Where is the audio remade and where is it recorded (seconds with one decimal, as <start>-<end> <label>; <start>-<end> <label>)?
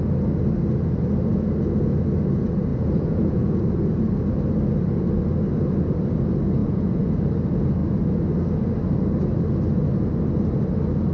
0.0-2.7 recorded; 2.7-3.6 remade; 3.6-6.6 recorded; 6.6-7.2 remade; 7.2-11.1 recorded